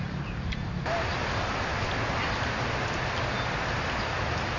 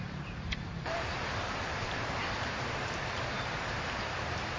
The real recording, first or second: first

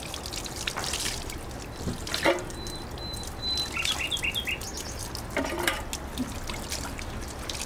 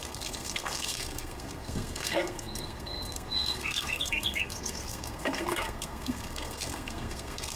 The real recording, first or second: first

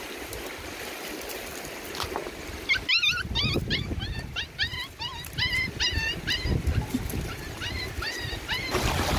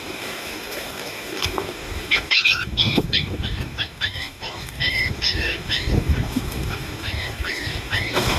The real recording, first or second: first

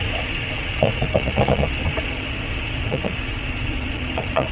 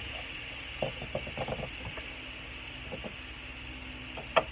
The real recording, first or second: second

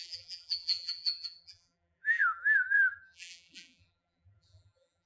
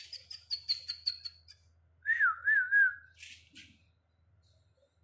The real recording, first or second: second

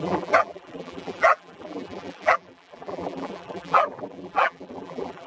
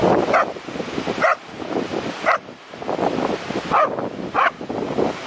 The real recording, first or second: second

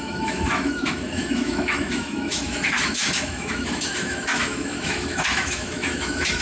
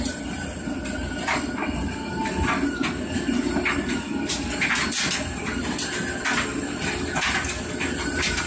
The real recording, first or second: second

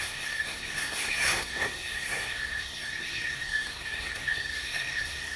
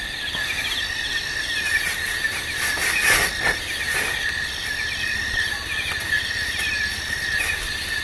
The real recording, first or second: second